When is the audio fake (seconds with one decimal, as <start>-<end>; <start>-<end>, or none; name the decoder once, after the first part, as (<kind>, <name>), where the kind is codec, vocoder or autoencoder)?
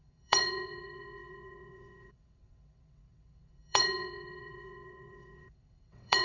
0.0-6.2 (vocoder, WaveNeXt)